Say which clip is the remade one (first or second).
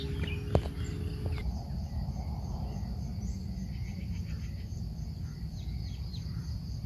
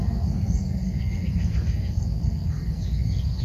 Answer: second